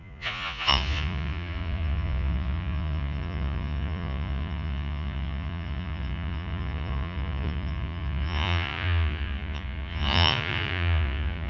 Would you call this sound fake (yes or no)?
yes